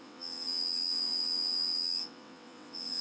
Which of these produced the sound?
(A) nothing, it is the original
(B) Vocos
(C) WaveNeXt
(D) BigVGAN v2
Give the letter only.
C